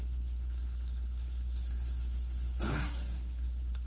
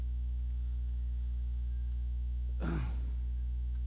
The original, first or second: second